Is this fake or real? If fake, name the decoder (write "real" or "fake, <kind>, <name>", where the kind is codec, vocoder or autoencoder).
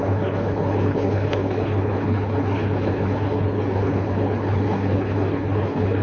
fake, codec, HILCodec